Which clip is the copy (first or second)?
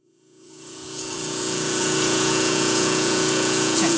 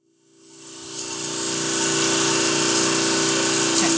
first